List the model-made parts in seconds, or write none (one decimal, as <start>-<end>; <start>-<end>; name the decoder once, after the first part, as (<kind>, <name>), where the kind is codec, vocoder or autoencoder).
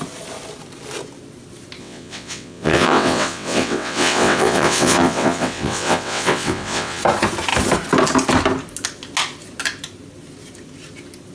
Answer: 1.8-7.0 (vocoder, WaveNeXt)